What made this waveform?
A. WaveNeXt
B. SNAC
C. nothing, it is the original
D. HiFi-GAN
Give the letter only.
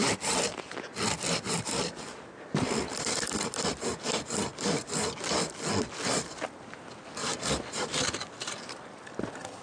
C